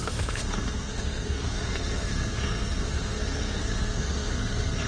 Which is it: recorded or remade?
remade